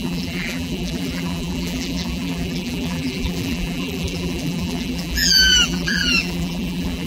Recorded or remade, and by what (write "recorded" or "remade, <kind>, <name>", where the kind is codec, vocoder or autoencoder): remade, vocoder, BigVGAN v2